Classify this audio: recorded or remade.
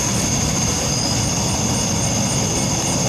recorded